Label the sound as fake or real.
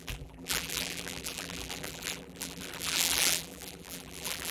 fake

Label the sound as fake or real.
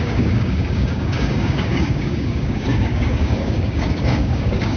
fake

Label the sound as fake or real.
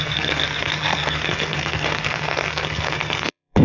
fake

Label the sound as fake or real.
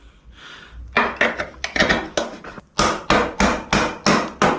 real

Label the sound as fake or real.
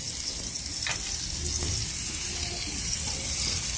real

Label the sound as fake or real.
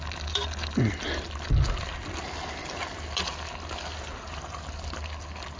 real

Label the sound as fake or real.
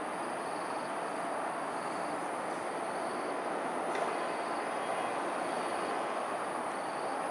real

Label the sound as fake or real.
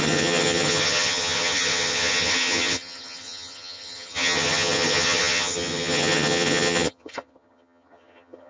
fake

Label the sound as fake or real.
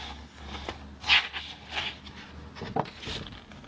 real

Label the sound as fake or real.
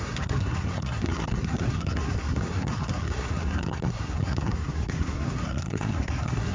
fake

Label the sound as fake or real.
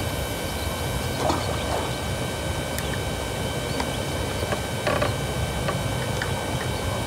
real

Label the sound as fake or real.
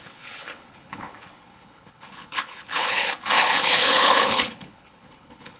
fake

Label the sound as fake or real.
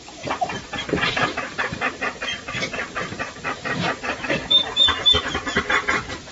fake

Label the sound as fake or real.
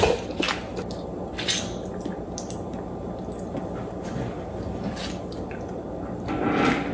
real